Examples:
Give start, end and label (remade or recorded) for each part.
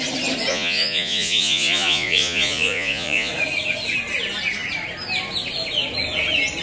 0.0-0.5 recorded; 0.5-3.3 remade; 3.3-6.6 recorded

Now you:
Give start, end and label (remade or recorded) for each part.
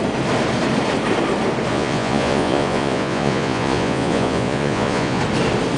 0.0-1.7 recorded; 1.7-5.2 remade; 5.2-5.8 recorded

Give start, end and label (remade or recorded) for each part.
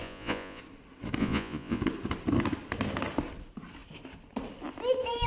0.0-0.6 remade; 0.6-1.2 recorded; 1.2-1.8 remade; 1.8-5.3 recorded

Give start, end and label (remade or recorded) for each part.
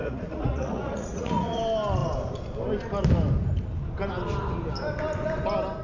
0.0-1.6 remade; 1.6-5.8 recorded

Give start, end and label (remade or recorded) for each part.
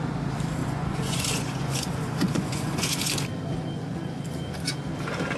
0.0-0.6 recorded; 0.6-3.1 remade; 3.1-5.4 recorded